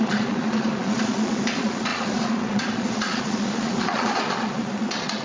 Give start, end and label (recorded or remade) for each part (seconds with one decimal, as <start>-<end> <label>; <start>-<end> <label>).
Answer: 0.0-5.2 remade